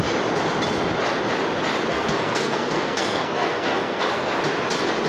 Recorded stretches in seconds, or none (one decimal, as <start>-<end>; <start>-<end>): 0.0-1.9; 4.3-5.1